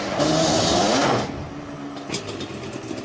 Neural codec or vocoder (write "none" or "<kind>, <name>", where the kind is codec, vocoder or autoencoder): none